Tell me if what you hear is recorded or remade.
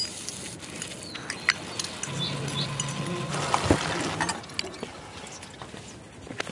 recorded